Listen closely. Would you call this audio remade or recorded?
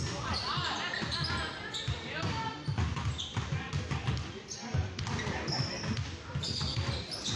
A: recorded